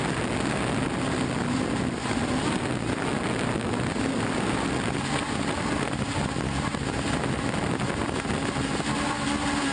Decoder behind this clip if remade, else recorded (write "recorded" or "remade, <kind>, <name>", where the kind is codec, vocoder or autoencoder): recorded